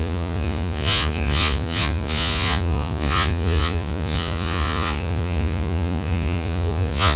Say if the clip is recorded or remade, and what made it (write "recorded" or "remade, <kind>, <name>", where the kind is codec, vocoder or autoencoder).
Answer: remade, vocoder, Vocos